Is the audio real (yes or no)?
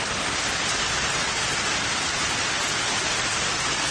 yes